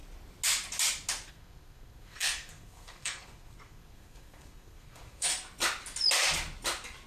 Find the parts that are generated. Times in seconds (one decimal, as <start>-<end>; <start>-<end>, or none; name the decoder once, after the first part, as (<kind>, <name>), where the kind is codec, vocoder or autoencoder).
1.3-5.3 (codec, SNAC)